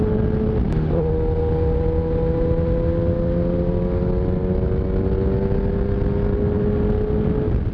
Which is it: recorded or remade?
recorded